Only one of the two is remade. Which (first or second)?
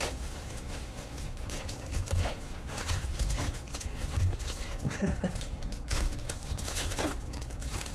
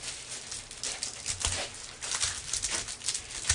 first